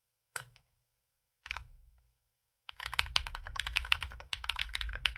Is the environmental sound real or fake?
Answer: fake